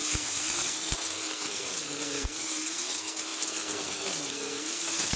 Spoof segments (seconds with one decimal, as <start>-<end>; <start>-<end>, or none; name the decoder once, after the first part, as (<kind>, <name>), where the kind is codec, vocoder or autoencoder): 0.0-5.2 (codec, SNAC)